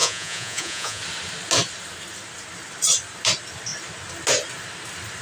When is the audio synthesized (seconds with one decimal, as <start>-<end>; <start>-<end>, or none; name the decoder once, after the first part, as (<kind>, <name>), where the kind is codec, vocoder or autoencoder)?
0.0-1.0 (vocoder, Vocos)